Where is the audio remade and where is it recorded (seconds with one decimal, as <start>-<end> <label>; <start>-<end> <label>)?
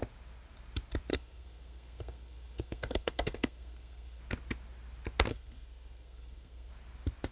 0.0-1.1 recorded; 1.1-4.2 remade; 4.2-5.3 recorded; 5.3-6.7 remade; 6.7-7.3 recorded